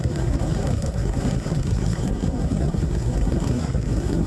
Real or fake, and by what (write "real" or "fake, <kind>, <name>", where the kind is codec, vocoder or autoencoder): fake, codec, SNAC